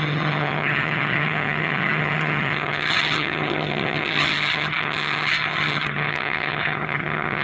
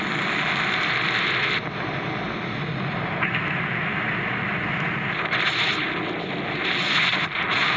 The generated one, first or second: first